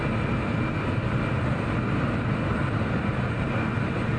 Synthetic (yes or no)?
no